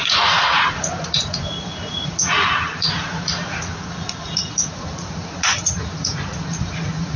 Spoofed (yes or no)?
yes